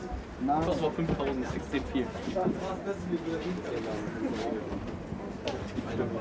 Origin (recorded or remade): recorded